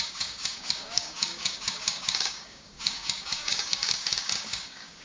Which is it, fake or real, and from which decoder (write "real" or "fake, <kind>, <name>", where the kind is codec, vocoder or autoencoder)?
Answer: fake, codec, DAC